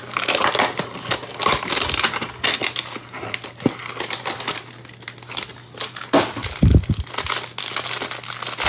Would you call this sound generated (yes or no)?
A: no